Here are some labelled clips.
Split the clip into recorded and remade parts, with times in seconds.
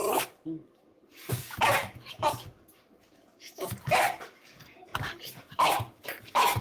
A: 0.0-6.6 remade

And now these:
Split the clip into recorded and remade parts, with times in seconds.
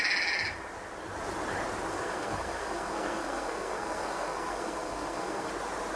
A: 0.0-1.9 recorded; 1.9-5.5 remade; 5.5-6.0 recorded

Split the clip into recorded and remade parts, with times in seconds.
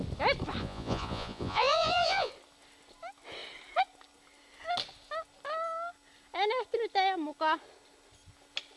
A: 0.0-0.6 recorded; 0.6-2.3 remade; 2.3-8.8 recorded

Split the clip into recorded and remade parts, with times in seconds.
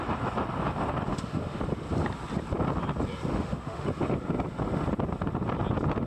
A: 0.0-1.1 recorded; 1.1-1.6 remade; 1.6-3.3 recorded; 3.3-3.9 remade; 3.9-6.1 recorded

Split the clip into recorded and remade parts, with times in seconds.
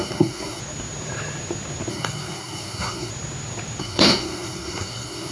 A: 0.0-0.6 remade; 0.6-1.9 recorded; 1.9-3.1 remade; 3.1-3.8 recorded; 3.8-5.3 remade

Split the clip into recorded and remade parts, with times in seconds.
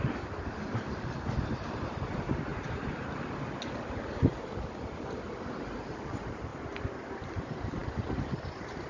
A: 0.0-2.5 recorded; 2.5-3.2 remade; 3.2-8.9 recorded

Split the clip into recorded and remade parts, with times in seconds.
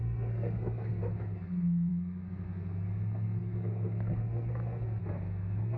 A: 0.0-5.8 remade